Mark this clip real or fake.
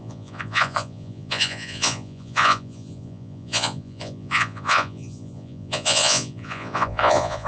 fake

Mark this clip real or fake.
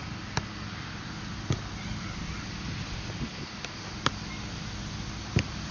real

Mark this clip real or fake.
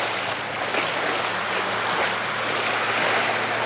real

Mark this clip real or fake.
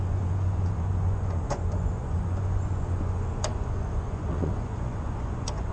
fake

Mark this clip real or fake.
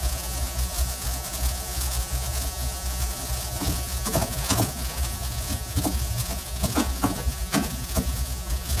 fake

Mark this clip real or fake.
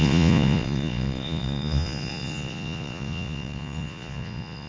fake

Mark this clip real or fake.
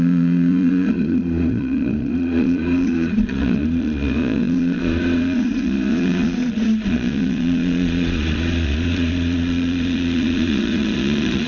fake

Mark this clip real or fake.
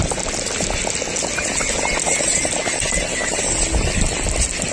real